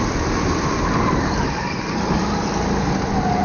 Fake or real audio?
real